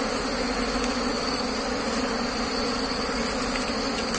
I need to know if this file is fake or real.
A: real